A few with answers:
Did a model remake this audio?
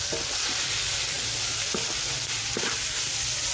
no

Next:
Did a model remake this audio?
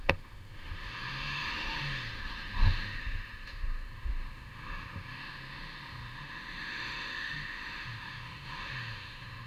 yes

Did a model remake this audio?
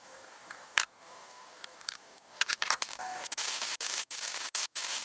yes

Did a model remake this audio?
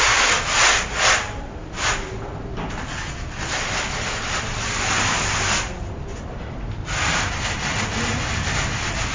no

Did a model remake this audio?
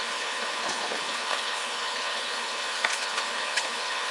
yes